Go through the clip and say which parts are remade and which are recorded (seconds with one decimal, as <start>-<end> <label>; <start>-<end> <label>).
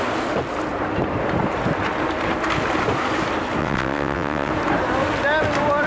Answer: 0.0-3.6 recorded; 3.6-4.5 remade; 4.5-5.9 recorded